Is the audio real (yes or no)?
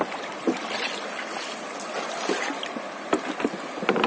yes